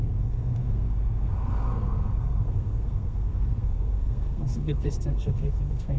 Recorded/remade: remade